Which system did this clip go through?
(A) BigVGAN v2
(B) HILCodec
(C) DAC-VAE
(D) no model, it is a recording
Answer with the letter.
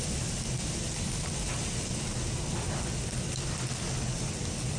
D